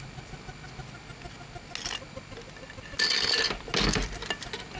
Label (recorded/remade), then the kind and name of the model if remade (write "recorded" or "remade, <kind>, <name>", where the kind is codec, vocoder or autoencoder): recorded